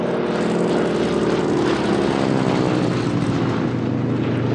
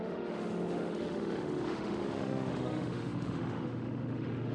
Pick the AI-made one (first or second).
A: second